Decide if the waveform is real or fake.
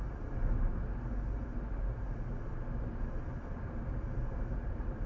real